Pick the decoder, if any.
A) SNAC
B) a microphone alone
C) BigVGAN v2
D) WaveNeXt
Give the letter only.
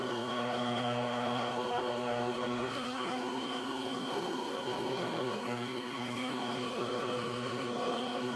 A